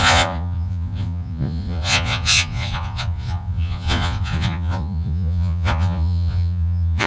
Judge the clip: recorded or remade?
remade